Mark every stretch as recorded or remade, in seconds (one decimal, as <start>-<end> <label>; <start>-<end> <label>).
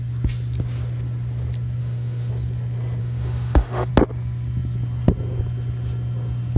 0.0-1.8 recorded; 1.8-2.3 remade; 2.3-3.0 recorded; 3.0-3.9 remade; 3.9-6.6 recorded